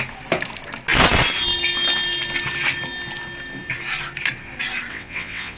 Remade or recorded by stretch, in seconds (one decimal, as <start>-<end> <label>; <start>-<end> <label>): 0.0-4.9 recorded; 4.9-5.6 remade